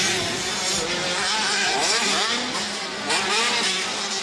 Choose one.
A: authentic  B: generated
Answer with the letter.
A